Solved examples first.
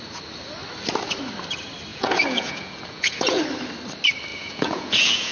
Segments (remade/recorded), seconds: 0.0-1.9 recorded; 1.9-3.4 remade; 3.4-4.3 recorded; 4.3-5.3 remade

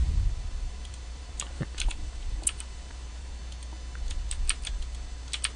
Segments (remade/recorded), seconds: 0.0-3.4 remade; 3.4-5.6 recorded

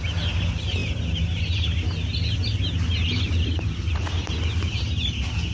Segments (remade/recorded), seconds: 0.0-5.5 recorded

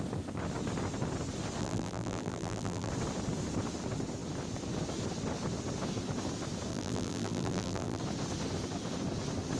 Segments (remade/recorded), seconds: 0.0-1.6 recorded; 1.6-2.9 remade; 2.9-6.7 recorded; 6.7-8.0 remade; 8.0-9.6 recorded

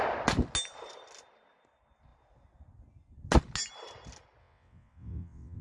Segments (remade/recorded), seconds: 0.0-4.4 recorded; 4.4-5.6 remade

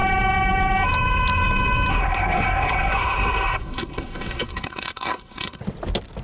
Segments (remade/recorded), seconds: 0.0-1.9 recorded; 1.9-5.6 remade; 5.6-6.2 recorded

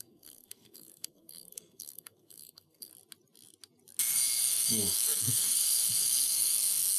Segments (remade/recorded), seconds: 0.0-2.9 remade; 2.9-4.5 recorded; 4.5-7.0 remade

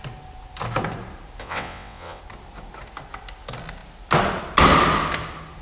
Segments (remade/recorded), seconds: 0.0-1.4 recorded; 1.4-2.2 remade; 2.2-5.6 recorded